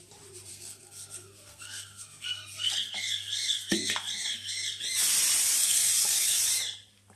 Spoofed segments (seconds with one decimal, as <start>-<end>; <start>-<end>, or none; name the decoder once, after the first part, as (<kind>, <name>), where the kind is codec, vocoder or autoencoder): 0.5-4.8 (codec, SNAC); 5.6-6.4